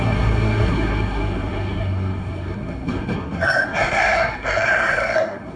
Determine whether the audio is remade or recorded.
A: remade